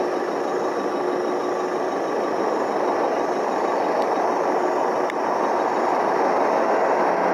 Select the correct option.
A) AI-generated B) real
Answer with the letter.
B